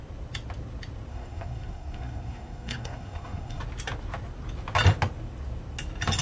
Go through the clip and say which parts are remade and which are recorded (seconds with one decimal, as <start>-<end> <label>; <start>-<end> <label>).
0.0-1.1 recorded; 1.1-3.6 remade; 3.6-6.2 recorded